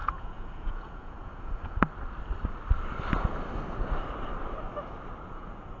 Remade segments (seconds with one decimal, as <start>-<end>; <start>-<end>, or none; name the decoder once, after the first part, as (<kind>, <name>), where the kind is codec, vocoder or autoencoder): 0.0-1.8 (vocoder, Vocos); 5.3-5.8